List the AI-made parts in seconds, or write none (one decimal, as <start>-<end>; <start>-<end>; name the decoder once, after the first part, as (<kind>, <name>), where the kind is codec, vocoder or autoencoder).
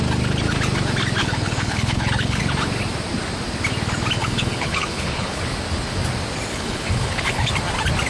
1.2-2.4 (codec, HILCodec); 4.2-5.4; 6.5-7.5